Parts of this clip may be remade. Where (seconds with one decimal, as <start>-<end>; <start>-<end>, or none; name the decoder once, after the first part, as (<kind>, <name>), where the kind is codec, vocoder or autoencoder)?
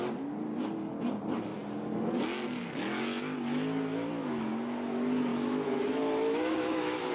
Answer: 5.3-7.1 (autoencoder, DAC-VAE)